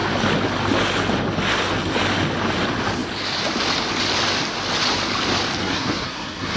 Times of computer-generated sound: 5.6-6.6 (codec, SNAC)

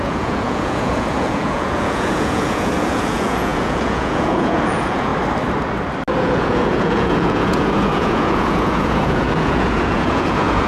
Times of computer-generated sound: 0.0-5.1 (vocoder, Vocos); 6.2-10.7

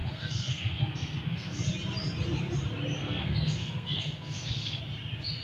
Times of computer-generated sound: 0.0-1.6 (codec, SNAC); 3.0-4.8

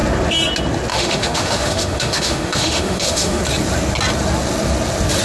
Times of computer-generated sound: 0.9-3.4 (autoencoder, DAC-VAE)

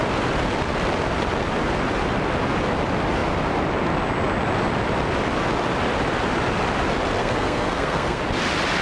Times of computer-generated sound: 7.2-8.2 (codec, SNAC)

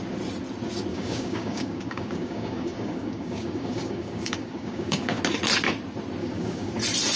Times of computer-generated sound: 0.9-5.2 (codec, DAC); 6.2-6.7

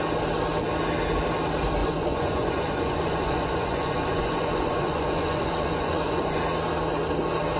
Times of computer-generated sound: 1.8-6.4 (vocoder, Vocos)

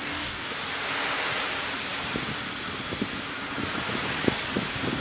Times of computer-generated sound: 0.0-0.5 (codec, DAC)